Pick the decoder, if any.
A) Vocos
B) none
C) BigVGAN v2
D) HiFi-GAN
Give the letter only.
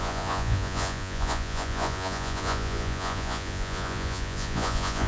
A